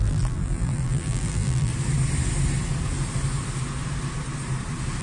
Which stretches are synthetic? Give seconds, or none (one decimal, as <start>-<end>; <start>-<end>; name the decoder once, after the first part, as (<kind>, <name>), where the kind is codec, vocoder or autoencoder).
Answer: 0.0-1.7 (vocoder, BigVGAN v2)